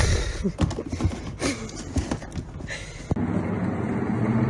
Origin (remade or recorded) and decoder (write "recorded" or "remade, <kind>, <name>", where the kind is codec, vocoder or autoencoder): recorded